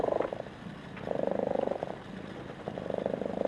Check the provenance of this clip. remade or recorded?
recorded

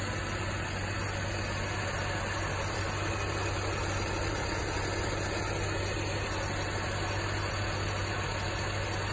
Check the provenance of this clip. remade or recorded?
recorded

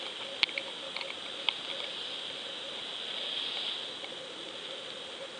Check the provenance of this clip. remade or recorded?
recorded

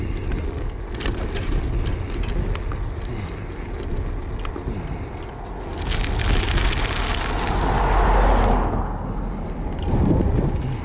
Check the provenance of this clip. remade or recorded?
recorded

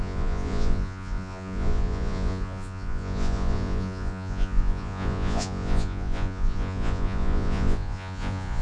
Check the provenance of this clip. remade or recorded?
remade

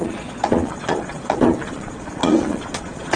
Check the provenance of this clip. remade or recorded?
remade